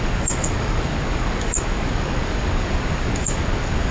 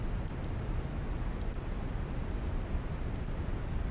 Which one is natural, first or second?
second